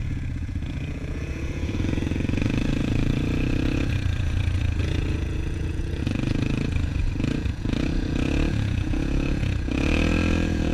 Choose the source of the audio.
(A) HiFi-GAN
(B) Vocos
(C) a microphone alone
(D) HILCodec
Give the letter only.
B